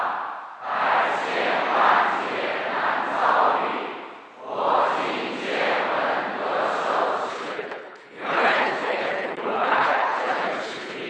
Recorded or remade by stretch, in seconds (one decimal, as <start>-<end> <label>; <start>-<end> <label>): 0.0-7.3 recorded; 7.3-11.1 remade